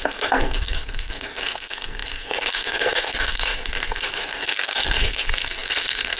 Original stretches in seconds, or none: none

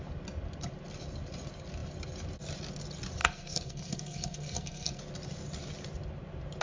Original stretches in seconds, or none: 0.0-3.2; 5.0-6.6

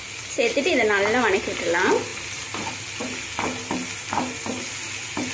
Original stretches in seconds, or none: 0.0-5.3

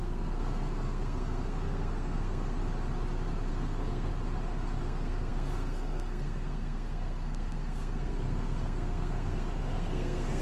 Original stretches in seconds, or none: 2.6-3.5; 4.1-4.8

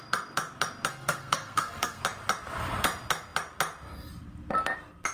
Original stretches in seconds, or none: 0.0-0.9; 2.0-5.1

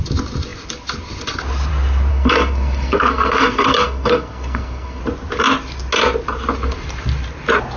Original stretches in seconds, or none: 0.0-2.1; 5.0-7.8